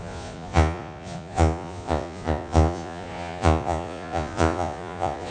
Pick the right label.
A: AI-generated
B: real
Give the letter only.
A